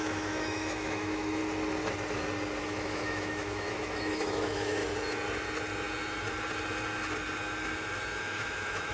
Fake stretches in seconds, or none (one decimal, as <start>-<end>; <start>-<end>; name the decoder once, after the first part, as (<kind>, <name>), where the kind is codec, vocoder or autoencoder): 0.0-1.4 (autoencoder, DAC-VAE); 2.6-4.8; 8.2-8.9